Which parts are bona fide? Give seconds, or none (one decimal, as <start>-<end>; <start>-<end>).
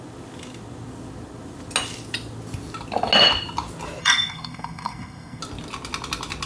0.0-4.0; 5.4-6.5